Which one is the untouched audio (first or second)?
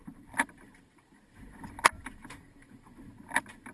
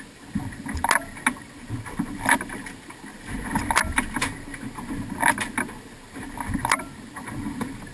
second